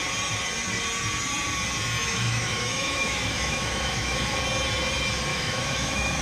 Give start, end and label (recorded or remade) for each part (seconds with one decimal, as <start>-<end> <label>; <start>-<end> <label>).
0.0-2.0 recorded; 2.0-4.4 remade; 4.4-5.3 recorded; 5.3-6.2 remade